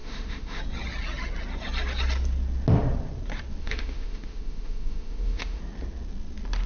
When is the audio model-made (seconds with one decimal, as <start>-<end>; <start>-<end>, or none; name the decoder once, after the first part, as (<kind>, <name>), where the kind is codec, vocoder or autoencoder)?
0.0-0.6 (autoencoder, DAC-VAE); 3.6-5.6